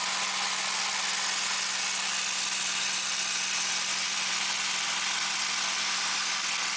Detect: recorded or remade recorded